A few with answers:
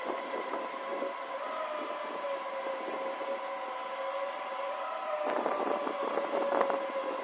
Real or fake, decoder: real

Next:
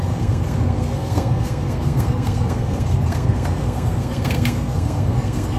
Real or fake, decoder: fake, codec, SNAC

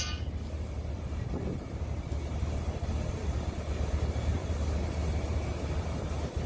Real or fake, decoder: real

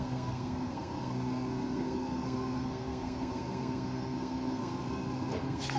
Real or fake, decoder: fake, codec, SNAC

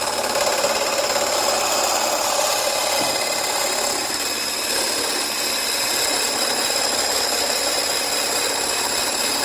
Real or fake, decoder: real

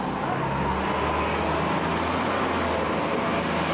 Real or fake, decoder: real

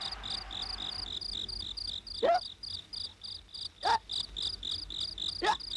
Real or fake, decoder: real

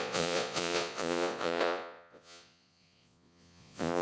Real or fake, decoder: fake, vocoder, Vocos